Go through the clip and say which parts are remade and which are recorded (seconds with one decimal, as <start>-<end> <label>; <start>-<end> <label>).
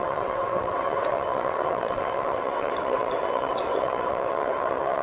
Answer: 0.0-5.0 remade